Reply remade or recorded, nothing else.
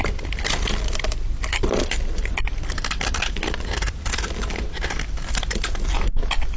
recorded